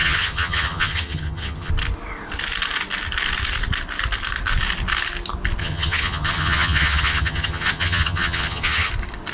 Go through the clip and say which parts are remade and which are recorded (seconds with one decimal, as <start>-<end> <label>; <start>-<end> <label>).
0.0-1.7 remade; 1.7-5.6 recorded; 5.6-8.9 remade; 8.9-9.3 recorded